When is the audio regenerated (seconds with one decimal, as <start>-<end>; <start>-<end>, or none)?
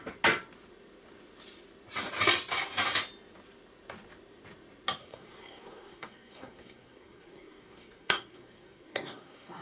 5.0-9.6